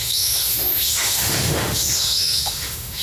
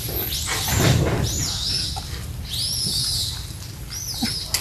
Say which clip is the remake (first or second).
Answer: first